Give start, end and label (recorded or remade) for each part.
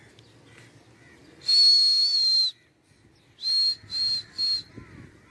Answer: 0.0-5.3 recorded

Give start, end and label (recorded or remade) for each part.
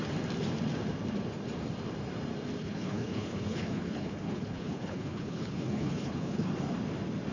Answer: 0.0-2.6 recorded; 2.6-6.5 remade; 6.5-7.3 recorded